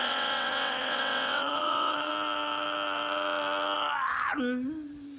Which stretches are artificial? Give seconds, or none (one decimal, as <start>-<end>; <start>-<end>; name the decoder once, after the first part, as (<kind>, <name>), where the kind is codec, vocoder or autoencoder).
0.0-2.1 (vocoder, WaveNeXt)

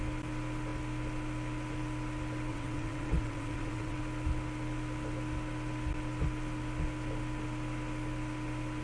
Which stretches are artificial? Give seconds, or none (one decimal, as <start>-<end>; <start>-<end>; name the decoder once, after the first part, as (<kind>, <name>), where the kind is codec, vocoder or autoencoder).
2.5-4.0 (vocoder, WaveNeXt)

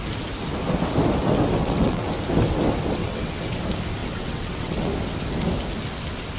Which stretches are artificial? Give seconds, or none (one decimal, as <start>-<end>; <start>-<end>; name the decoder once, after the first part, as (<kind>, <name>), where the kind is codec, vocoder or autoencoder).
1.6-2.1 (vocoder, WaveNeXt); 3.0-3.6; 4.0-4.9

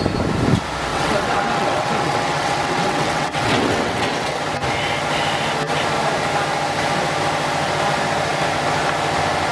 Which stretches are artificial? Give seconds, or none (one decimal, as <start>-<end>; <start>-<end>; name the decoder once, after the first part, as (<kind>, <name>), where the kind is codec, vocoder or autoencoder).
0.9-4.4 (vocoder, WaveNeXt)

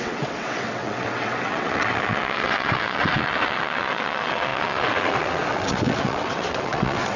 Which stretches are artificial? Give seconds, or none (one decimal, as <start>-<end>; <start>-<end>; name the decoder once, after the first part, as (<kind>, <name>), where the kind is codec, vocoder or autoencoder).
0.0-7.2 (vocoder, WaveNeXt)

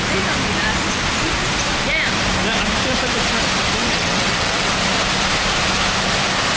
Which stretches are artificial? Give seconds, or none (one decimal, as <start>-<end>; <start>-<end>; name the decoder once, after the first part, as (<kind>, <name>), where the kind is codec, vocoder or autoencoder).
3.8-4.7 (vocoder, WaveNeXt)

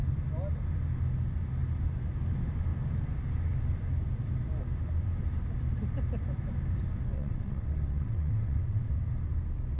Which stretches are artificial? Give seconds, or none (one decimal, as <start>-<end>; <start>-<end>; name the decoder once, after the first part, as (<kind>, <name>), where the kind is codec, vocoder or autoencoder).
7.1-9.0 (vocoder, WaveNeXt)